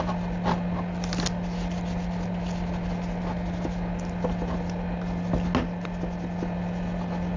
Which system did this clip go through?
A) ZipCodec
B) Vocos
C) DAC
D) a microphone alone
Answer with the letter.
D